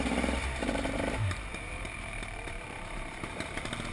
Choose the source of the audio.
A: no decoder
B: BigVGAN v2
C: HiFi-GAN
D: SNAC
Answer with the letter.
B